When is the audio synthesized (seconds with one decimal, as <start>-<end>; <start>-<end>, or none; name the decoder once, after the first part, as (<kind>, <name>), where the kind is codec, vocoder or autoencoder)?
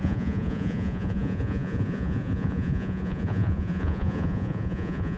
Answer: 0.0-5.2 (vocoder, Vocos)